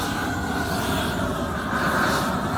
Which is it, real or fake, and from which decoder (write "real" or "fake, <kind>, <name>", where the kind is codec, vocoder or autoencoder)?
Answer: real